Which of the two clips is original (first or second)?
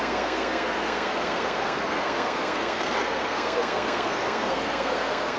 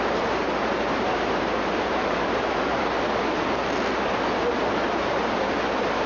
second